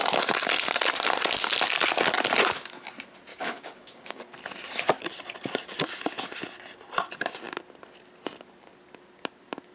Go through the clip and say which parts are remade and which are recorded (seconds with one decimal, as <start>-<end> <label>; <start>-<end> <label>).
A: 0.0-3.3 recorded; 3.3-4.2 remade; 4.2-9.7 recorded